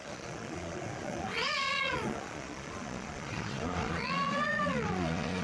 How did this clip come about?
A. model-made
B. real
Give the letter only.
A